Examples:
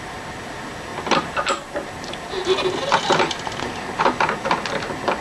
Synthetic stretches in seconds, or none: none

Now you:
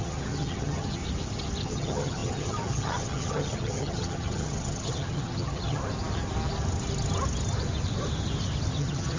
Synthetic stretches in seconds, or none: 0.0-1.0 (vocoder, HiFi-GAN); 1.6-5.8; 8.7-9.2